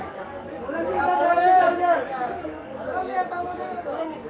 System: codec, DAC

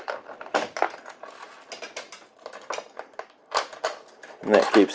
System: none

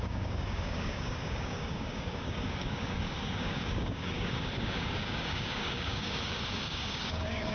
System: codec, DAC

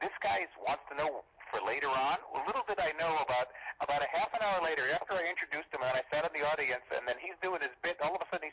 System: none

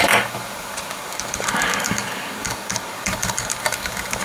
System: codec, DAC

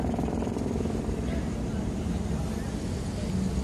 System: none